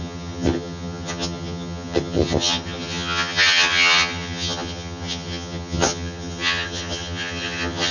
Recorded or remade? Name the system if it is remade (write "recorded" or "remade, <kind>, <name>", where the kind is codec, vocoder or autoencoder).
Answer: remade, vocoder, HiFi-GAN